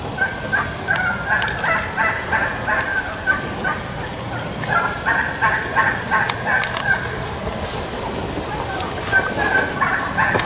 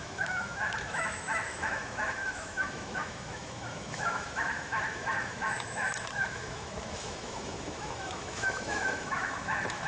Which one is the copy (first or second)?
second